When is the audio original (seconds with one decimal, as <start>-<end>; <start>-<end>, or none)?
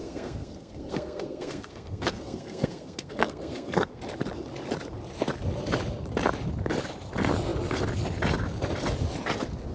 4.0-9.7